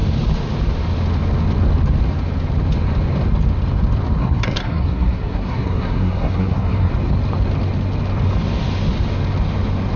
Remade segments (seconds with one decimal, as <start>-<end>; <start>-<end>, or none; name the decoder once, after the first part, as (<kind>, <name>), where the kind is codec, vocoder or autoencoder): 4.2-6.9 (codec, SNAC)